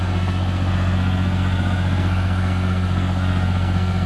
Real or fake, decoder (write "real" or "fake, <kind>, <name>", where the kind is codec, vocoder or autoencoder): fake, codec, SNAC